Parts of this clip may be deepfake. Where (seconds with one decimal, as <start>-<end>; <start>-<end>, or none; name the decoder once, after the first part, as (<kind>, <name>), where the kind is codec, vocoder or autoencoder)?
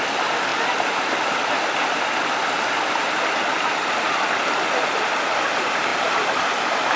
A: none